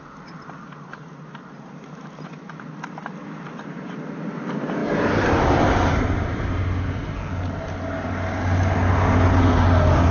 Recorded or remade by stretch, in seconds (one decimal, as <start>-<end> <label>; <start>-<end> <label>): 0.0-4.8 recorded; 4.8-5.9 remade; 5.9-10.1 recorded